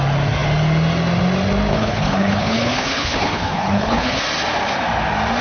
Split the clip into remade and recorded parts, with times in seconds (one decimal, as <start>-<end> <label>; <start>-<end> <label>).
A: 0.0-1.7 recorded; 1.7-4.2 remade; 4.2-5.4 recorded